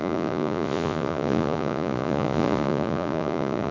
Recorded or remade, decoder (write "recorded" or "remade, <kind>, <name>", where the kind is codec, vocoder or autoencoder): remade, vocoder, Vocos